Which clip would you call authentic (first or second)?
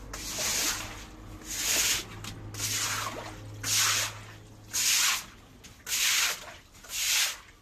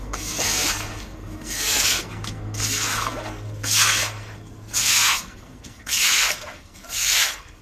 first